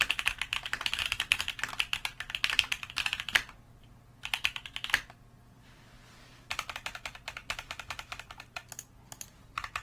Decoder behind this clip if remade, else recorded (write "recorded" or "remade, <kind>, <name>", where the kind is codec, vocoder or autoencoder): recorded